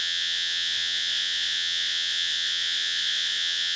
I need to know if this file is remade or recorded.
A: remade